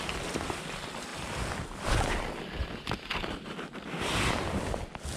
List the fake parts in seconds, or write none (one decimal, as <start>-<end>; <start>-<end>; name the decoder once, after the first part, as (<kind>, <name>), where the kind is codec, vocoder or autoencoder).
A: none